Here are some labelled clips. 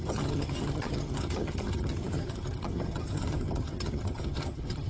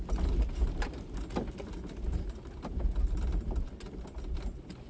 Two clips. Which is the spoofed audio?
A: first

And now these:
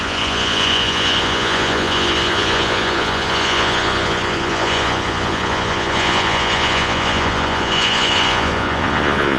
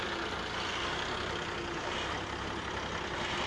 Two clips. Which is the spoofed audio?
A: first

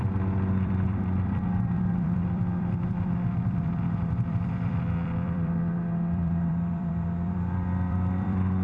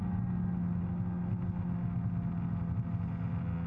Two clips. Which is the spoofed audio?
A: first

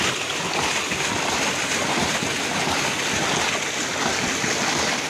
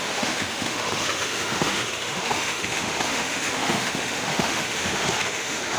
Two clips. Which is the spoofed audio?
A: second